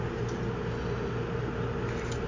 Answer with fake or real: real